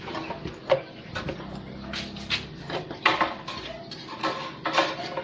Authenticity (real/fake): real